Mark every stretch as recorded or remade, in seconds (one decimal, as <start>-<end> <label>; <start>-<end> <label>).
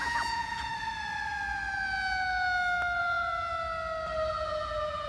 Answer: 0.0-0.7 remade; 0.7-3.0 recorded; 3.0-3.5 remade; 3.5-4.3 recorded; 4.3-5.1 remade